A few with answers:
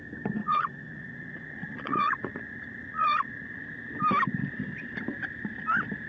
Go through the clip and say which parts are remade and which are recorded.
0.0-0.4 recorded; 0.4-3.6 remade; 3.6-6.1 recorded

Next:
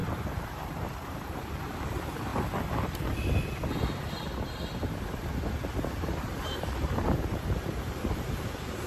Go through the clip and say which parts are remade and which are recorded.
0.0-2.3 remade; 2.3-5.9 recorded; 5.9-8.9 remade

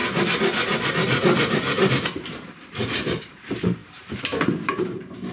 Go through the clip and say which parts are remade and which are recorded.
0.0-1.9 recorded; 1.9-5.3 remade